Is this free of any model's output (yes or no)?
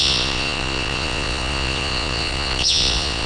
no